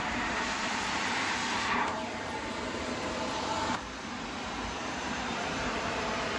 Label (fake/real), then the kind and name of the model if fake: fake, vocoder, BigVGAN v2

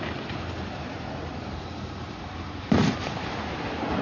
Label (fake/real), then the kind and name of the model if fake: fake, vocoder, BigVGAN v2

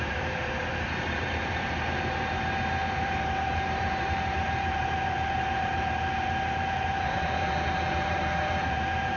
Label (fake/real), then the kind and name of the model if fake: fake, vocoder, BigVGAN v2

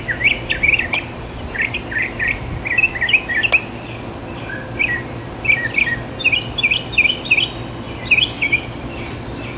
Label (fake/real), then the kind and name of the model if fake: real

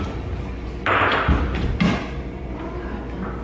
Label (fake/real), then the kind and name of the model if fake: real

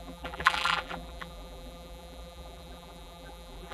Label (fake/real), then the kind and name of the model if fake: fake, vocoder, BigVGAN v2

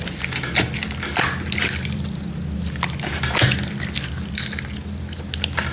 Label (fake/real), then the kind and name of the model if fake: real